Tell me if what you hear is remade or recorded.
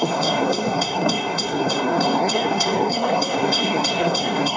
remade